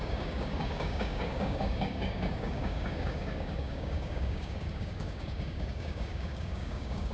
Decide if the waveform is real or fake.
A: fake